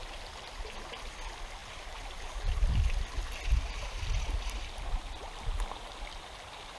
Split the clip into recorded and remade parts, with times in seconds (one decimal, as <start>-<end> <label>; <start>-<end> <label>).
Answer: 0.0-6.8 recorded